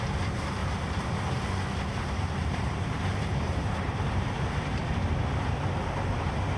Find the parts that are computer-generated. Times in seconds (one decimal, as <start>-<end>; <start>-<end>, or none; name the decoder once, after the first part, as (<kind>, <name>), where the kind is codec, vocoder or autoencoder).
0.6-1.1 (vocoder, BigVGAN v2); 2.4-4.8

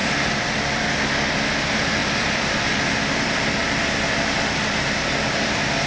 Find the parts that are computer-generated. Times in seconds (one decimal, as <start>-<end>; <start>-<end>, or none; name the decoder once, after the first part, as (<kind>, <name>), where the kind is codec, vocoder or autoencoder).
0.0-1.3 (vocoder, BigVGAN v2); 2.0-5.5

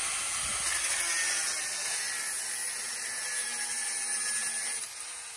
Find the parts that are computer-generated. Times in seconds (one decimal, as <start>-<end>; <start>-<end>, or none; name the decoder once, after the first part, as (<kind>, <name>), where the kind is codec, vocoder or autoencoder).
none

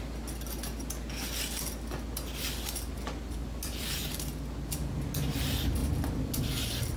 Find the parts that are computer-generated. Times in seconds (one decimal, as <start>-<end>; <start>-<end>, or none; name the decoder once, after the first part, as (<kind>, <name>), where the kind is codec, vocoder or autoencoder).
3.4-4.1 (vocoder, BigVGAN v2); 5.8-6.4

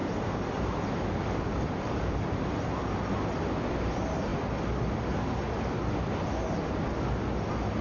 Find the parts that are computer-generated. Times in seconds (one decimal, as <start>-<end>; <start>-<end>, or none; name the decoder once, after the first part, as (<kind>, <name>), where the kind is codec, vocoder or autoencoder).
0.0-2.6 (vocoder, BigVGAN v2)